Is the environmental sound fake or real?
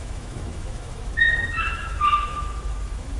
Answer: fake